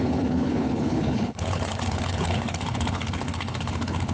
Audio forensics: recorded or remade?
remade